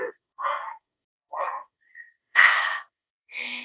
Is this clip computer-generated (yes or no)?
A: yes